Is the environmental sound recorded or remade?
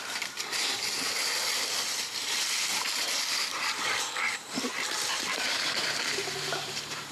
remade